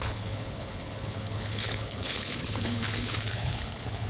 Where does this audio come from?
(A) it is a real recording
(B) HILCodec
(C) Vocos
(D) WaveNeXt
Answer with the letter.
B